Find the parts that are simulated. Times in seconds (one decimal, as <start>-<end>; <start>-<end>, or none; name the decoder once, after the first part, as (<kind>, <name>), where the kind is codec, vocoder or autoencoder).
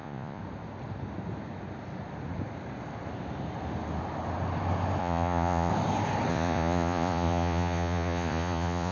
0.0-0.4 (vocoder, Vocos); 5.0-5.7; 6.3-8.9